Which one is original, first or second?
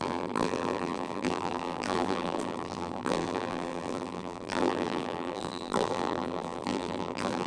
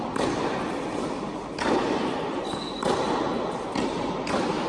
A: second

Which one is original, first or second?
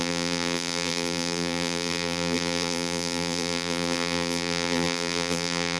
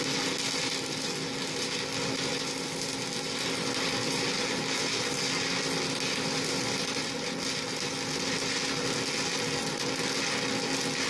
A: second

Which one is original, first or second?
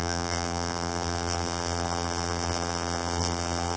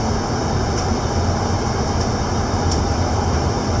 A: second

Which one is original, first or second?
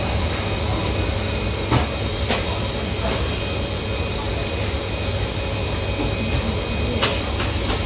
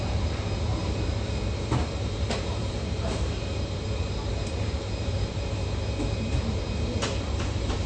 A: first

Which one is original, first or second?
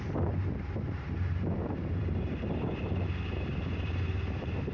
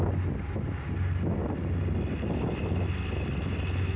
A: second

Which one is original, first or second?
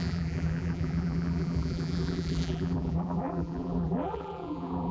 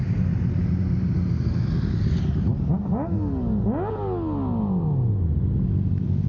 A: second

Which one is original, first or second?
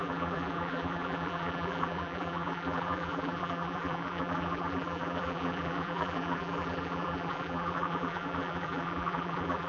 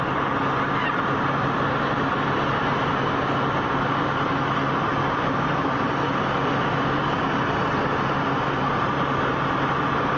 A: second